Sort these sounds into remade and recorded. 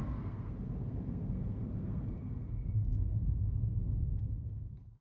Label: remade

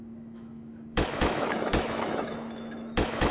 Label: remade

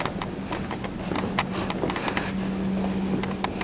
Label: recorded